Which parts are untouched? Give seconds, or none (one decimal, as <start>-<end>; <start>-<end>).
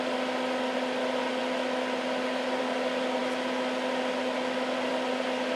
0.0-5.6